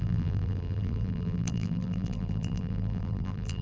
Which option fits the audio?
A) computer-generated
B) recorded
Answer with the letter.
A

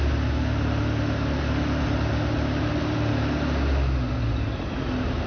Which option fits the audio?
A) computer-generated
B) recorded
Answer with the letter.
B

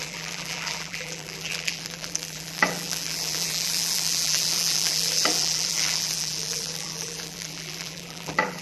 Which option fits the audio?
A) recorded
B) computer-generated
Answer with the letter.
B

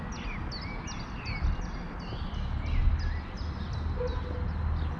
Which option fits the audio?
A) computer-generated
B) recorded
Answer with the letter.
B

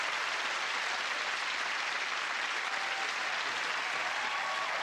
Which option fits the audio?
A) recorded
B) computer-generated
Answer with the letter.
A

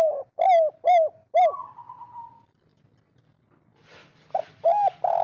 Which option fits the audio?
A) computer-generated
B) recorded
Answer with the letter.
B